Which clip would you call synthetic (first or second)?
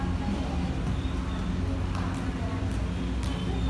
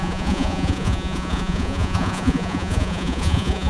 second